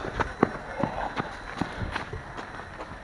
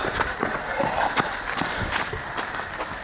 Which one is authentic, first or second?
first